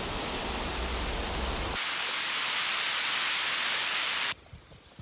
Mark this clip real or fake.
real